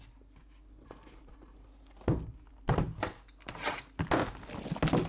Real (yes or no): yes